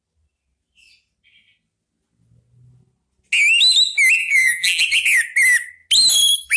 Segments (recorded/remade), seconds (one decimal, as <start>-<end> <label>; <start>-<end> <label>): 0.0-4.2 recorded; 4.2-4.8 remade; 4.8-6.6 recorded